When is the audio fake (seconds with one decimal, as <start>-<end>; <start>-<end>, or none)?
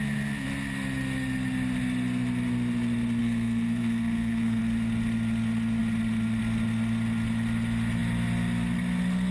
3.2-4.6